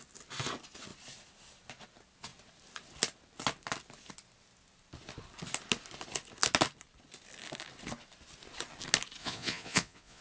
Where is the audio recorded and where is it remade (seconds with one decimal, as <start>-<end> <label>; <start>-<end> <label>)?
0.0-9.2 recorded; 9.2-10.2 remade